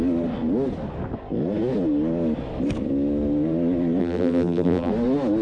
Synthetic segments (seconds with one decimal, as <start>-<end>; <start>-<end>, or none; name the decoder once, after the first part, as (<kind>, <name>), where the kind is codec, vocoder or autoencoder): 4.0-4.9 (vocoder, BigVGAN v2)